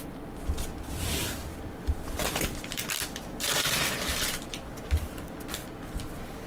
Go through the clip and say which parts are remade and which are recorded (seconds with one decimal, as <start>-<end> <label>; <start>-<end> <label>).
0.0-1.5 recorded; 1.5-5.4 remade; 5.4-6.5 recorded